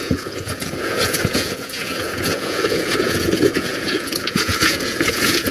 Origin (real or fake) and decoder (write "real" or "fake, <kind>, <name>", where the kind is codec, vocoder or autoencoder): fake, vocoder, Vocos